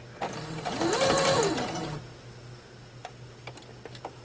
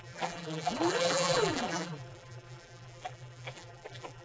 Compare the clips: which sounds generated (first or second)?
second